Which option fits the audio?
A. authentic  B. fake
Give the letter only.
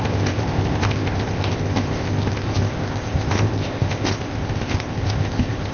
B